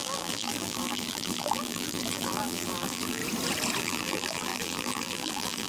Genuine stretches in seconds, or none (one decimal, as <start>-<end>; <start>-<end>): 3.2-3.8